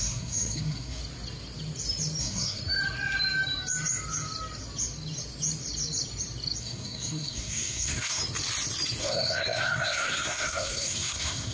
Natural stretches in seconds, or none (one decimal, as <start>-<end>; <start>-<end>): 1.0-2.2; 2.6-6.6; 8.2-9.0

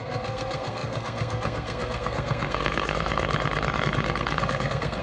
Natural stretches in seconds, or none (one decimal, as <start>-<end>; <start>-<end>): none

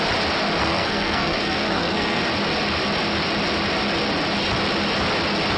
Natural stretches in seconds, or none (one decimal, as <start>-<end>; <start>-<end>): 0.0-0.6; 2.2-5.6

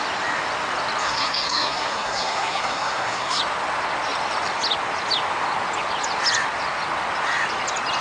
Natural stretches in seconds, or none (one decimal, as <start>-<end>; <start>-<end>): 0.0-1.0; 3.4-8.0

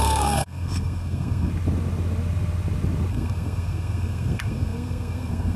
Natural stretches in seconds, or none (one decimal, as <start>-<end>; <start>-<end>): 1.5-3.1

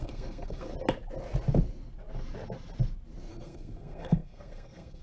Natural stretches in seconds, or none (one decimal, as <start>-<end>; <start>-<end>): 0.7-3.3

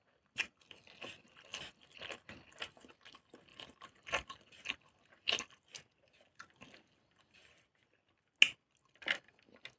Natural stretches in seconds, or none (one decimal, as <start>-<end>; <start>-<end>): 0.0-9.8